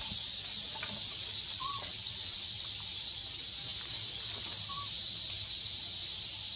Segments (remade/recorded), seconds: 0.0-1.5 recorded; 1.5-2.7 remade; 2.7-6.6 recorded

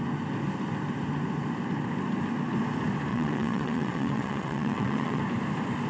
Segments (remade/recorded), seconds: 0.0-3.1 recorded; 3.1-5.2 remade; 5.2-5.9 recorded

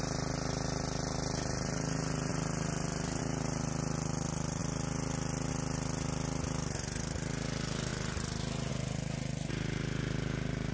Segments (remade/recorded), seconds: 0.0-10.7 recorded

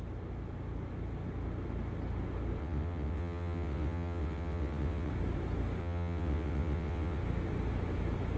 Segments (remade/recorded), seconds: 0.0-2.6 recorded; 2.6-5.1 remade; 5.1-5.8 recorded; 5.8-7.2 remade; 7.2-8.4 recorded